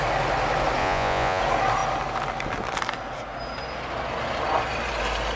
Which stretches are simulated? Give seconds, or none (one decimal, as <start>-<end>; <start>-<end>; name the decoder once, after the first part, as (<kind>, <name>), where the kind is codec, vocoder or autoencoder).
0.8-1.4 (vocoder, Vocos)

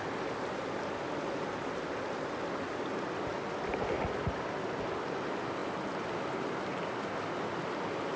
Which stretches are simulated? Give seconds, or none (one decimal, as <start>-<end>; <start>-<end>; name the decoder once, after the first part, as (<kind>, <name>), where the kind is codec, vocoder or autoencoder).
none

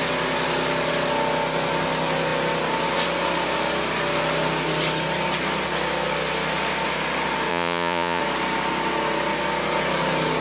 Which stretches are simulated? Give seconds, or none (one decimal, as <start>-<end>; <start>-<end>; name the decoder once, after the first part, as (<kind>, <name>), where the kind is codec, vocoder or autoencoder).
7.5-8.2 (vocoder, Vocos)

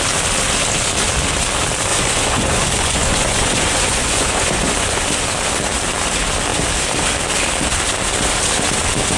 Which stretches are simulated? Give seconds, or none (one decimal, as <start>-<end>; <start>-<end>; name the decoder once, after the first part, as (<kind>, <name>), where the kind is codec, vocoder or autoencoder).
1.9-5.0 (vocoder, Vocos)

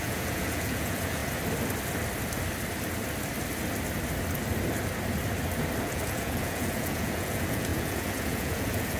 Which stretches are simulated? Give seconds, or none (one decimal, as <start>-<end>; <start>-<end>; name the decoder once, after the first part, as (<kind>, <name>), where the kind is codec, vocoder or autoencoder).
0.0-1.2 (vocoder, Vocos); 5.8-9.0